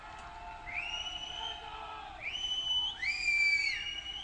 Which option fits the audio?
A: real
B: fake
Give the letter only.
A